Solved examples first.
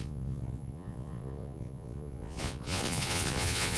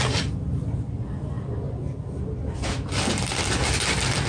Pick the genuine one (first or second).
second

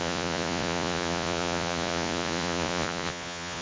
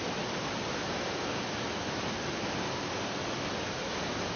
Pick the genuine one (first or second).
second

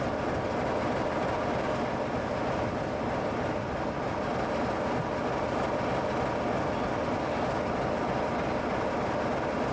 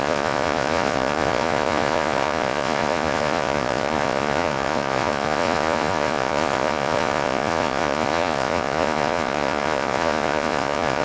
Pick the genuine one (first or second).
first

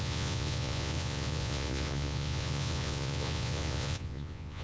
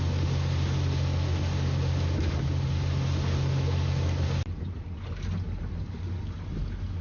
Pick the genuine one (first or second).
second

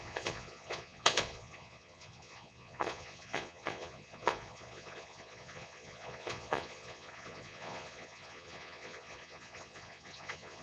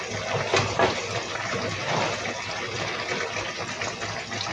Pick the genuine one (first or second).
second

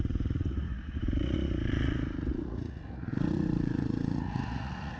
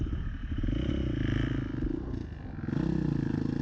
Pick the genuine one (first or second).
second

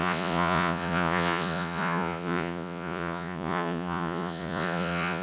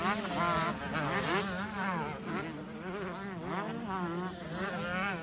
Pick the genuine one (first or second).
second